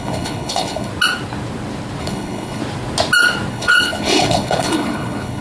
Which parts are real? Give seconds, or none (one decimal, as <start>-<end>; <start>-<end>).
0.9-2.0; 2.6-3.5